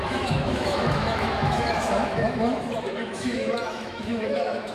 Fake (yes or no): yes